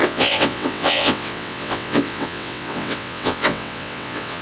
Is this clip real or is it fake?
fake